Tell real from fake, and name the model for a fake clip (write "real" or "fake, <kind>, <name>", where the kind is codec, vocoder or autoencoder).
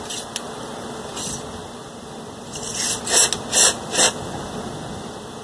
real